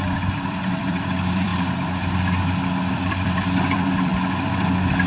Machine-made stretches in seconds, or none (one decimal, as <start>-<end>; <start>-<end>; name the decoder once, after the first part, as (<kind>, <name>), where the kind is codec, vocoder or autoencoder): 0.0-1.5 (vocoder, BigVGAN v2); 2.9-4.1